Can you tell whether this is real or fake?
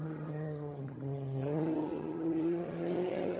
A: fake